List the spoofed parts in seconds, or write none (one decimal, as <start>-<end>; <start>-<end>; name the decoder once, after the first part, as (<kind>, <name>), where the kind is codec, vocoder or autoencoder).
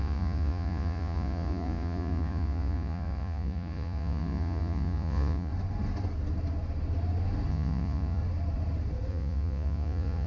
0.0-5.5 (vocoder, Vocos); 7.5-8.2; 9.1-10.3